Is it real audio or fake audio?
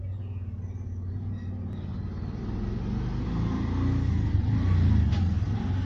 real